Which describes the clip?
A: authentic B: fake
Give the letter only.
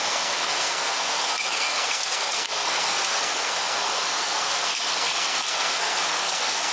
B